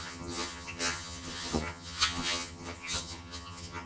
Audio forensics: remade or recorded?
remade